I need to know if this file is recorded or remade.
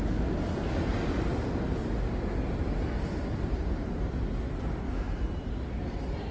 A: recorded